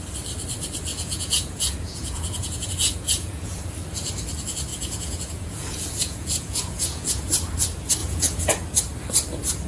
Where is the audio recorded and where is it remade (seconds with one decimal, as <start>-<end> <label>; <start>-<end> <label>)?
0.0-0.9 recorded; 0.9-3.6 remade; 3.6-4.7 recorded; 4.7-7.3 remade; 7.3-8.0 recorded; 8.0-8.5 remade; 8.5-9.7 recorded